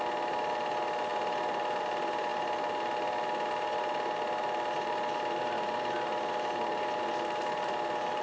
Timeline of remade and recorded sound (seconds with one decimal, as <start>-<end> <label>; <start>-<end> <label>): 0.0-1.1 recorded; 1.1-1.8 remade; 1.8-8.2 recorded